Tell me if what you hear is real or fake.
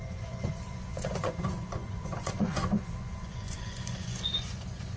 fake